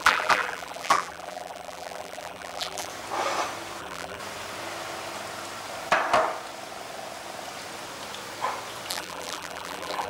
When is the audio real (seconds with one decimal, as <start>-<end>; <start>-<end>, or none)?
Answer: 2.9-3.8; 4.2-8.9